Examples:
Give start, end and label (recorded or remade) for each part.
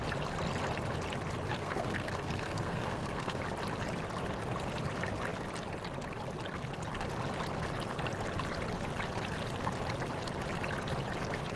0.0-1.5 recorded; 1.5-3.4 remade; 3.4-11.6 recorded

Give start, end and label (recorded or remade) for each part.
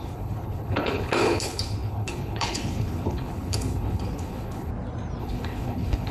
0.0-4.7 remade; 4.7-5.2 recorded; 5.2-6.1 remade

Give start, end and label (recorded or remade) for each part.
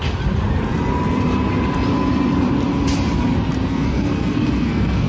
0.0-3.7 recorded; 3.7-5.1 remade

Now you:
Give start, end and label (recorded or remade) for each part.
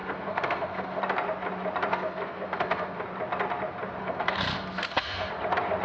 0.0-1.0 remade; 1.0-1.9 recorded; 1.9-3.0 remade; 3.0-4.0 recorded; 4.0-5.3 remade; 5.3-5.8 recorded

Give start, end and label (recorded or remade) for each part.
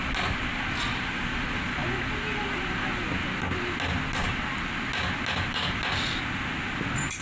0.0-7.2 recorded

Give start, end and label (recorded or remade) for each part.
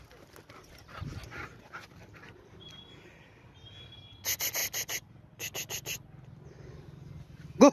0.0-7.7 recorded